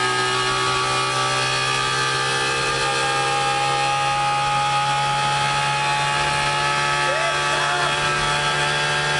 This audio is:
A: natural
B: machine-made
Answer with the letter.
A